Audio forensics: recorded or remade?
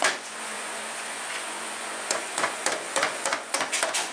remade